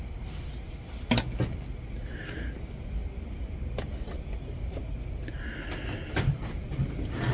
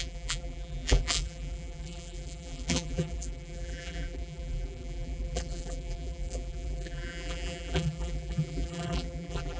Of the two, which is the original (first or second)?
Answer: first